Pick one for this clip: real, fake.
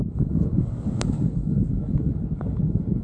fake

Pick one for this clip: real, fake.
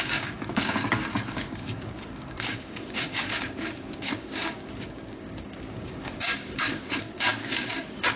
fake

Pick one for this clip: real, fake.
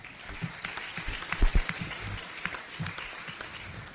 real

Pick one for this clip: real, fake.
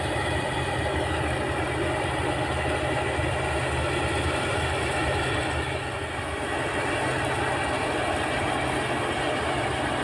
real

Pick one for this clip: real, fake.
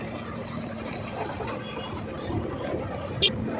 real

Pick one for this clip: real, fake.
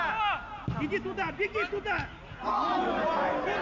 real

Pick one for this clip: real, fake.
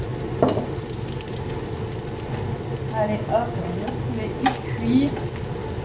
real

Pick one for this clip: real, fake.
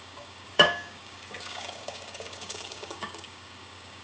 fake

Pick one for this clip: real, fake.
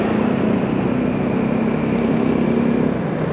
real